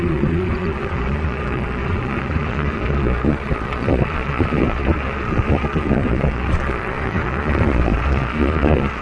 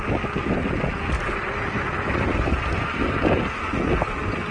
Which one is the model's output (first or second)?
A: first